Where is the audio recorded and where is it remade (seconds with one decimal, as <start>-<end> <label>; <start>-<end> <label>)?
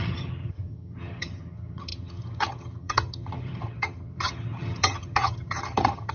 0.0-6.1 remade